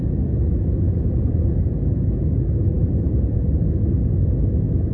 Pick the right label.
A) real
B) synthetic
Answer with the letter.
A